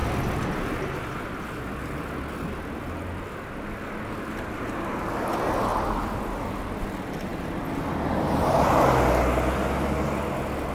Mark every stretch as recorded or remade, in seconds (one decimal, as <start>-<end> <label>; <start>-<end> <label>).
0.0-5.7 recorded; 5.7-6.6 remade; 6.6-10.7 recorded